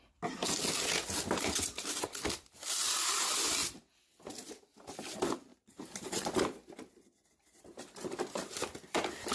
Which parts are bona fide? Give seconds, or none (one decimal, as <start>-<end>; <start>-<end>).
0.0-5.5; 8.2-9.3